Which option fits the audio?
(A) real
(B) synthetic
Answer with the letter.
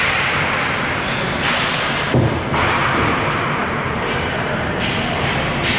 B